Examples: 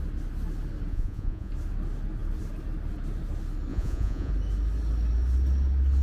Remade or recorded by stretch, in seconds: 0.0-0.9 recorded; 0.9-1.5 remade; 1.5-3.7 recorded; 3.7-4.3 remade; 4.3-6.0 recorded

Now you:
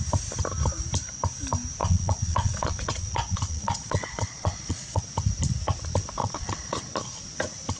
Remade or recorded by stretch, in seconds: 0.0-1.8 recorded; 1.8-5.0 remade; 5.0-6.2 recorded; 6.2-6.8 remade; 6.8-7.8 recorded

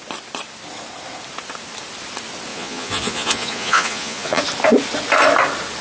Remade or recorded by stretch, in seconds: 0.0-2.5 recorded; 2.5-4.4 remade; 4.4-5.8 recorded

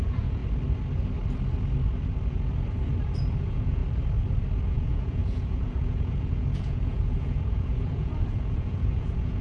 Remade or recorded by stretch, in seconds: 0.0-0.4 remade; 0.4-3.4 recorded; 3.4-3.8 remade; 3.8-4.7 recorded; 4.7-9.4 remade

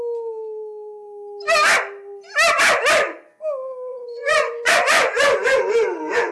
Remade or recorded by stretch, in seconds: 0.0-3.9 recorded; 3.9-6.3 remade